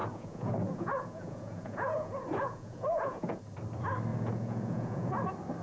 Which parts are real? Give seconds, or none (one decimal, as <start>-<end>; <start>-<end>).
3.4-4.1; 5.1-5.6

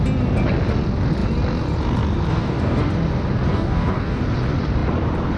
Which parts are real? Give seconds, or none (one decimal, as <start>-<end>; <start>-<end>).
0.0-2.3; 2.8-3.5; 4.2-5.4